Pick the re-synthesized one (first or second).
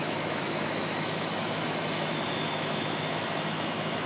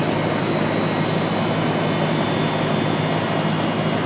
first